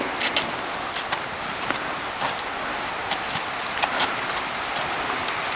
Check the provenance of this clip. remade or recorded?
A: recorded